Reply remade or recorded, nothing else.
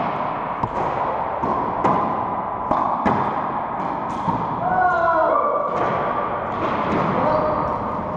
recorded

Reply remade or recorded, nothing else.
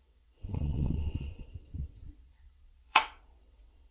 remade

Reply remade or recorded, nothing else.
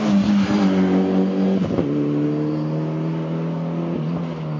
recorded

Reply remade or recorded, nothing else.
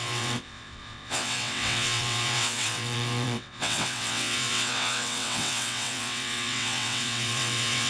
remade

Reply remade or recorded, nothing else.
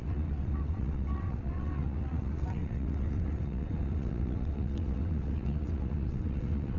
remade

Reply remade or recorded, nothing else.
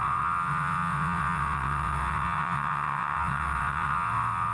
remade